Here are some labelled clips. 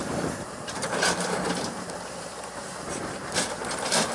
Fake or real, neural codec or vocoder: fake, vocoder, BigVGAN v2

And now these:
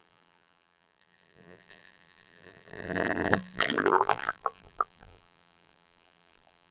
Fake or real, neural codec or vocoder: fake, vocoder, BigVGAN v2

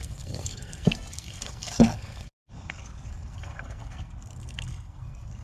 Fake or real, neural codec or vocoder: fake, codec, SNAC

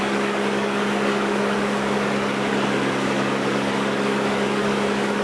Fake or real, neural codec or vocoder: fake, codec, DAC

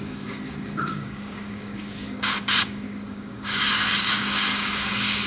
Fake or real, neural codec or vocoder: fake, codec, DAC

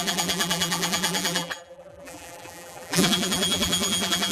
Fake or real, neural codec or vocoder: fake, vocoder, BigVGAN v2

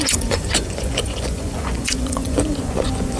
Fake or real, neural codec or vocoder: fake, vocoder, Vocos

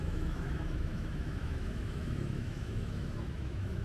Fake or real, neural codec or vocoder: fake, autoencoder, DAC-VAE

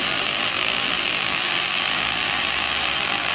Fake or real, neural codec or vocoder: fake, vocoder, BigVGAN v2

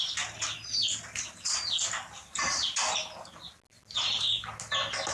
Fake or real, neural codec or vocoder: real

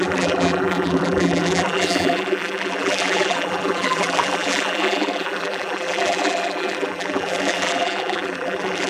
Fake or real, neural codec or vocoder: fake, vocoder, BigVGAN v2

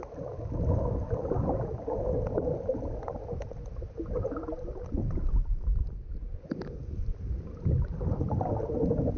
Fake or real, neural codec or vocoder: real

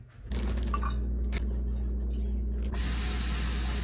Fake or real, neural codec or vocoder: real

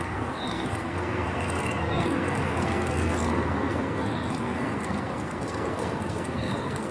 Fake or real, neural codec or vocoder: fake, codec, SNAC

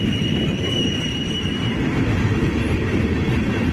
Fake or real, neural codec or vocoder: real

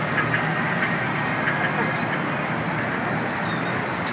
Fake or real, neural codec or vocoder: real